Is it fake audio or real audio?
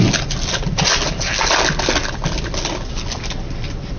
real